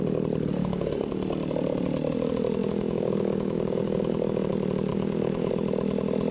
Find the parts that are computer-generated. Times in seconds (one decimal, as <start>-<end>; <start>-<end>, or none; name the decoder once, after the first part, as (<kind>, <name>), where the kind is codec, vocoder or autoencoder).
0.6-1.1 (codec, DAC); 2.6-4.5; 4.9-5.5